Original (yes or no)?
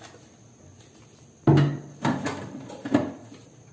yes